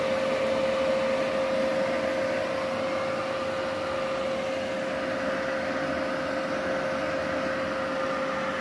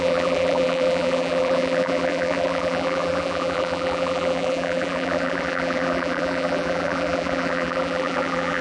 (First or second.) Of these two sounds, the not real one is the second